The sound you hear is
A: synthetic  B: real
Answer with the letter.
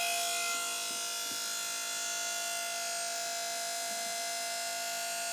B